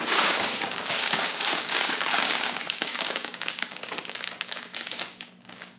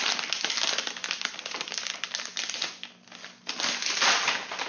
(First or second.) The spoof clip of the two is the first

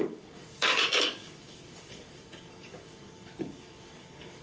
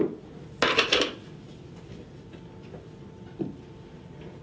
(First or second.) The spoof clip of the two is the first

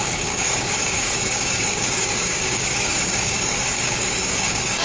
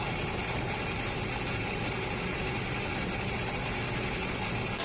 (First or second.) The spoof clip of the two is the first